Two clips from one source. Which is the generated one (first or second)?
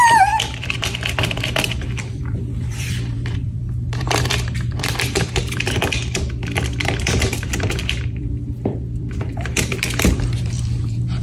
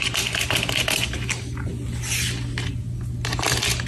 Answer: first